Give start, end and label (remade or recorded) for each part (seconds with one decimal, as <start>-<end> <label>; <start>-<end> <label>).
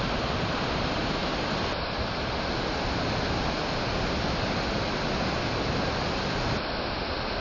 0.0-7.4 recorded